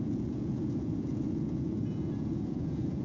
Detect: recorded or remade remade